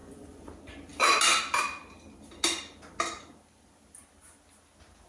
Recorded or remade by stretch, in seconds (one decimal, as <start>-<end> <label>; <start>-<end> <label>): 0.0-0.5 remade; 0.5-5.1 recorded